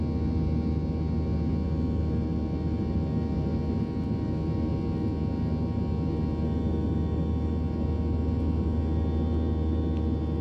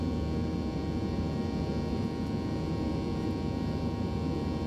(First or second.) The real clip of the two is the first